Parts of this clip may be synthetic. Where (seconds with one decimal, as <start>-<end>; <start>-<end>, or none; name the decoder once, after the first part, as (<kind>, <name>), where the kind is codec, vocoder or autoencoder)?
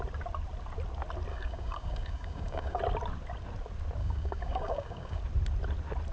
1.3-2.8 (codec, DAC); 4.0-5.2